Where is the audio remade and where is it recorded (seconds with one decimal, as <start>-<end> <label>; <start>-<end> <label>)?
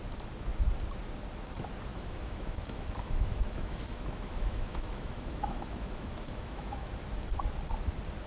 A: 0.0-1.9 recorded; 1.9-6.9 remade; 6.9-8.3 recorded